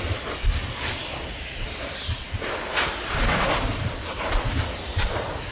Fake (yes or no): no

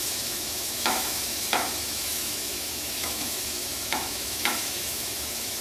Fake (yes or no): yes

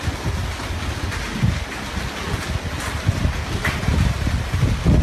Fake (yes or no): no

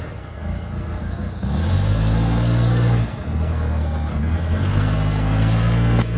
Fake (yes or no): yes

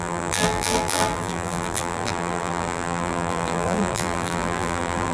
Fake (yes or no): yes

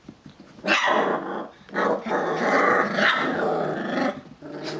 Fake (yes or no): no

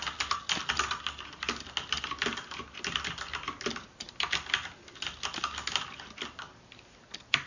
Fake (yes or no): no